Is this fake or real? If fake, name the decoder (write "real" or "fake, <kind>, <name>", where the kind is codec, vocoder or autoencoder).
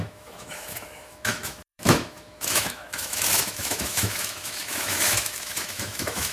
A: fake, autoencoder, DAC-VAE